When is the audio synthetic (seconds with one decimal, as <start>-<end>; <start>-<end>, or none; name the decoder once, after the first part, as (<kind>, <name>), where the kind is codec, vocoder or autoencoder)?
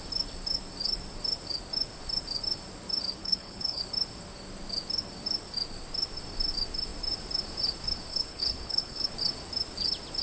3.2-3.8 (codec, HILCodec); 8.1-9.1